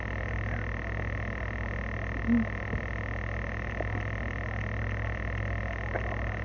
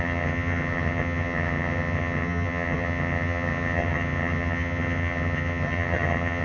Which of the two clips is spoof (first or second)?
second